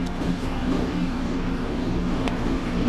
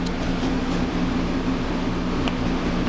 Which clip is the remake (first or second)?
first